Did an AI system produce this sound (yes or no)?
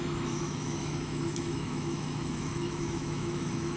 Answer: yes